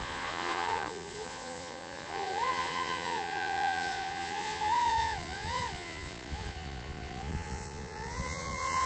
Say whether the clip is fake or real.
fake